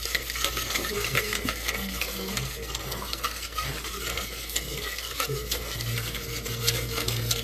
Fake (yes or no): yes